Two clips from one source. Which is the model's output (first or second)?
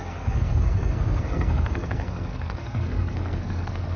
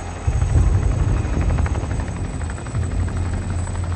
first